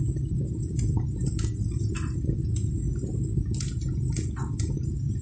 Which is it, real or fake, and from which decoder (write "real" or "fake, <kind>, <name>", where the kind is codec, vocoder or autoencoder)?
real